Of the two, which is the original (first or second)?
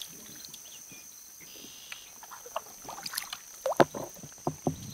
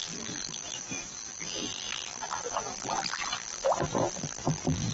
first